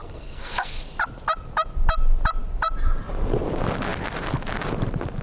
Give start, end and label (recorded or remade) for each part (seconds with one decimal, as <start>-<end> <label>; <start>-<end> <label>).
0.0-0.8 remade; 0.8-5.2 recorded